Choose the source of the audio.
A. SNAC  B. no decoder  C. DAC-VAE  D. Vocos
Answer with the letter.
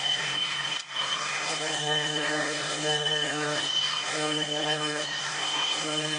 A